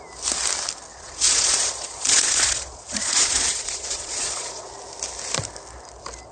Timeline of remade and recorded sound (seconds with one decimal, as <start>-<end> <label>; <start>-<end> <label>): 0.0-0.9 recorded; 0.9-4.7 remade; 4.7-6.3 recorded